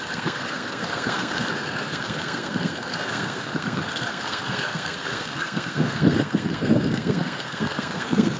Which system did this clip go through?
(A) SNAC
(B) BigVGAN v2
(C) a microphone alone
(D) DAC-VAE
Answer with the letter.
A